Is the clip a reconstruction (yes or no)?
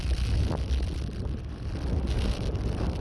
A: no